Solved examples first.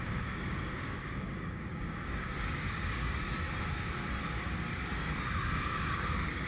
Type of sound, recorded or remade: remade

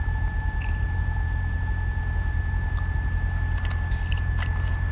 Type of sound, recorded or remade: recorded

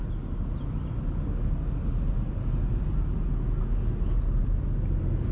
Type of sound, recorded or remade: recorded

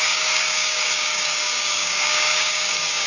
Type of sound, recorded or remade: remade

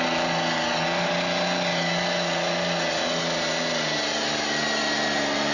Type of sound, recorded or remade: recorded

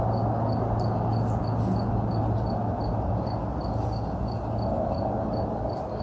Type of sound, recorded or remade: recorded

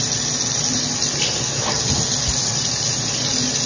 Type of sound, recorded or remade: recorded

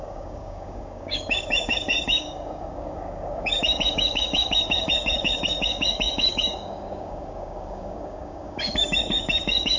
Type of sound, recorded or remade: remade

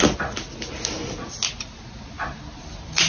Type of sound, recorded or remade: recorded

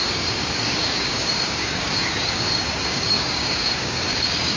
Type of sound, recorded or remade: remade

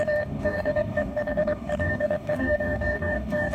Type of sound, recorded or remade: remade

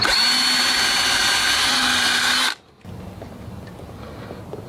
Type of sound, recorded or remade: recorded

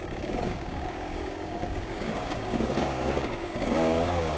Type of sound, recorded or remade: remade